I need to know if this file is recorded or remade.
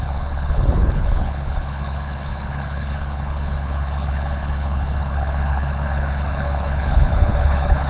remade